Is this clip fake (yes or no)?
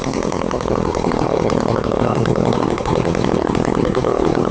yes